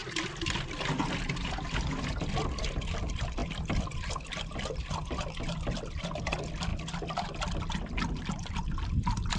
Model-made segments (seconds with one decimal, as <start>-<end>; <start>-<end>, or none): none